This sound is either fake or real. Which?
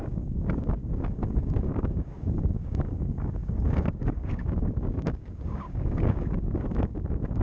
fake